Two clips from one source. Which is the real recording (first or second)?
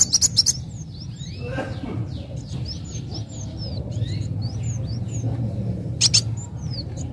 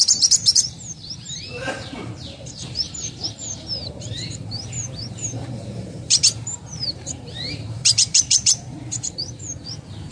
first